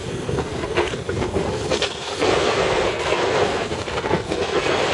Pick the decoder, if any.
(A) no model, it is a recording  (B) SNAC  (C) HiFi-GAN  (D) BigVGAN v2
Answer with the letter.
B